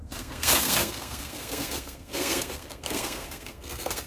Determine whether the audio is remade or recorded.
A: remade